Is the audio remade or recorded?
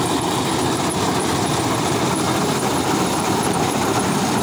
remade